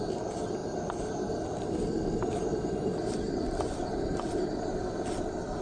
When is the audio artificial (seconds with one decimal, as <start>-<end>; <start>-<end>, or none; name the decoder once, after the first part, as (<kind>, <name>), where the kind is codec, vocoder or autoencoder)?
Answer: none